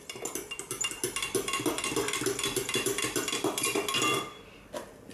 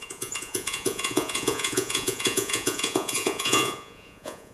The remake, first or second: second